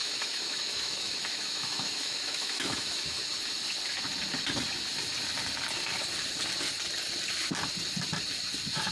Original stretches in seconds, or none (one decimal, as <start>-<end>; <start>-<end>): 3.2-8.9